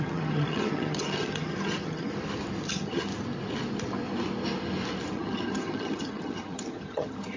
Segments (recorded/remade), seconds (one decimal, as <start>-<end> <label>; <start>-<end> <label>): 0.0-2.1 remade; 2.1-2.7 recorded; 2.7-3.1 remade; 3.1-5.1 recorded; 5.1-7.4 remade